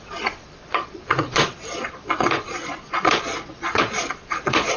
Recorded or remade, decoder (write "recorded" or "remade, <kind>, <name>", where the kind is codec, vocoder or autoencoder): remade, vocoder, Vocos